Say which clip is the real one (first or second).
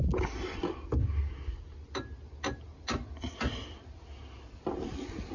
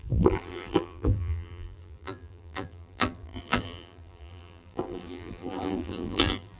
first